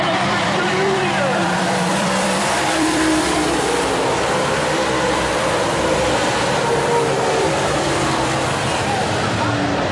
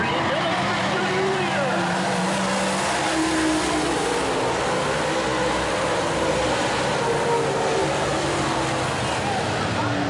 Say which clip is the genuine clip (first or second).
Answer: second